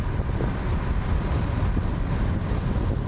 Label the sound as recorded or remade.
recorded